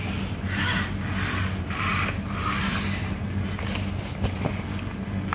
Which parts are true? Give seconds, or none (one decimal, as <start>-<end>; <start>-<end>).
0.0-5.3